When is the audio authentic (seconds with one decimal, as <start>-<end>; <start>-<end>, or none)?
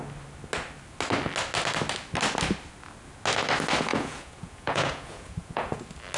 0.0-3.9; 5.8-6.2